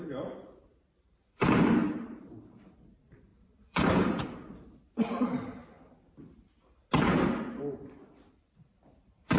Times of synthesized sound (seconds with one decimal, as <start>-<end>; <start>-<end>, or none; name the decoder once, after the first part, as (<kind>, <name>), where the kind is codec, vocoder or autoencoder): 0.0-5.6 (vocoder, BigVGAN v2); 8.3-9.4